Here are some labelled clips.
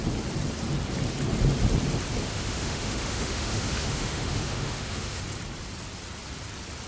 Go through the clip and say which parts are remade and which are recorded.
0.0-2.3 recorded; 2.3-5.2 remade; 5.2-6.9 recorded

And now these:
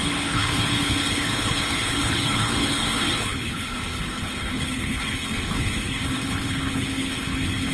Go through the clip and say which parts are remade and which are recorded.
0.0-7.7 remade